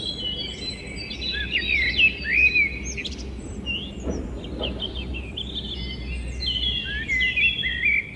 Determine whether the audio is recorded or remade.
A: recorded